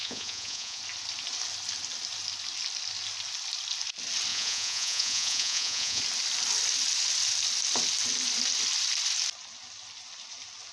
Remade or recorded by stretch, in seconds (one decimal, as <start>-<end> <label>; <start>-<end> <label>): 0.0-0.8 remade; 0.8-4.3 recorded; 4.3-6.0 remade; 6.0-10.7 recorded